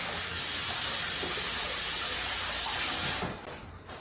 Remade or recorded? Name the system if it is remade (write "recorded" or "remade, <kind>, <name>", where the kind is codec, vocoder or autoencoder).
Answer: recorded